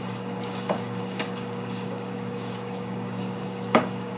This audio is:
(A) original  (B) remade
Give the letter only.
B